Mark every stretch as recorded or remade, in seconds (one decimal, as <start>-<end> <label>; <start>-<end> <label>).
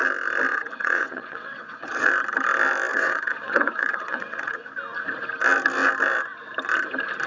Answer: 0.0-0.5 recorded; 0.5-2.1 remade; 2.1-2.9 recorded; 2.9-4.6 remade; 4.6-7.3 recorded